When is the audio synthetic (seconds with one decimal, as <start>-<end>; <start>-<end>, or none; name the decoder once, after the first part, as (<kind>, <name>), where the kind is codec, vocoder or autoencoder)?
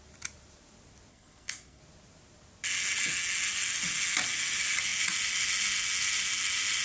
1.1-1.8 (codec, SNAC)